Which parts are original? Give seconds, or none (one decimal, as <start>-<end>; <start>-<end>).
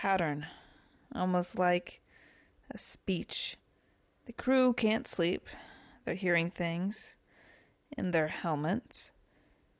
0.0-0.7; 3.6-9.8